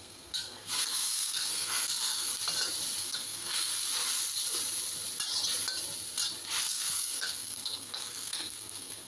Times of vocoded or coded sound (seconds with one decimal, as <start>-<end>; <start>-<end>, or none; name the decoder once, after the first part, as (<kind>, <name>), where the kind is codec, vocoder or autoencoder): 0.0-2.3 (codec, SNAC); 3.0-3.7; 6.6-9.1